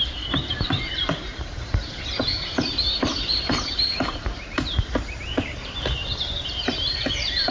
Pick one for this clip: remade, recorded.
remade